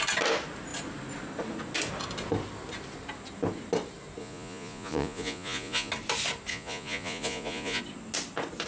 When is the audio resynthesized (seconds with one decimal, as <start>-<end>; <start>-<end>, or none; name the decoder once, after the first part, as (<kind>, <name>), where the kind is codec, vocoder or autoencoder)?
4.2-5.9 (vocoder, Vocos); 6.5-7.8